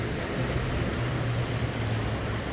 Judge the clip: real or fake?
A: real